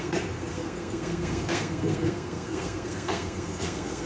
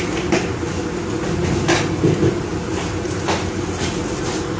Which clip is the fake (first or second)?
first